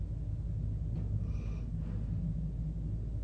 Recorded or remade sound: recorded